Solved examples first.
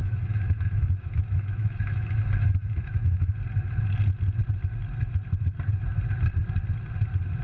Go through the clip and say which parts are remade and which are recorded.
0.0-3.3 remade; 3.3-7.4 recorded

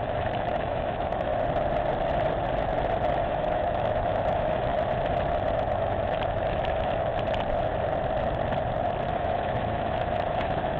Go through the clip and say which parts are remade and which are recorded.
0.0-1.3 remade; 1.3-3.2 recorded; 3.2-4.7 remade; 4.7-5.5 recorded; 5.5-7.1 remade; 7.1-9.1 recorded; 9.1-10.8 remade

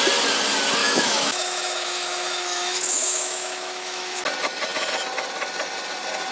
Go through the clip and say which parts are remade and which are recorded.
0.0-0.8 recorded; 0.8-4.2 remade; 4.2-6.3 recorded

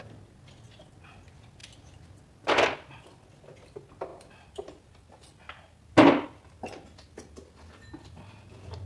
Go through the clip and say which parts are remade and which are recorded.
0.0-8.9 recorded